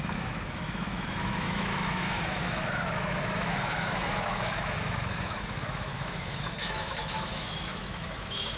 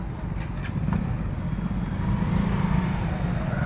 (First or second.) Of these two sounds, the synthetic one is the first